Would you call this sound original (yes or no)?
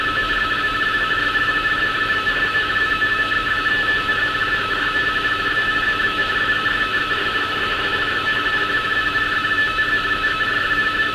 no